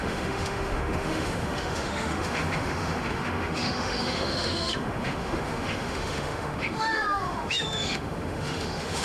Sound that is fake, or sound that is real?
fake